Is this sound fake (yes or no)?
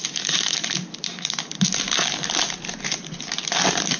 no